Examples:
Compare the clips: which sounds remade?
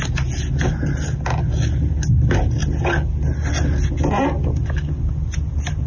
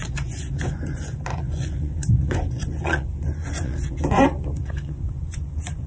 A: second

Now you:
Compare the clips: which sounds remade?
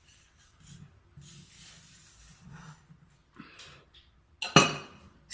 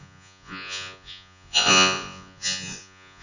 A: second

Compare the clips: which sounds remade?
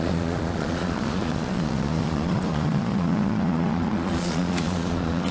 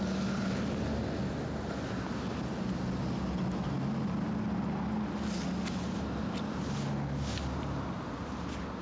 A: first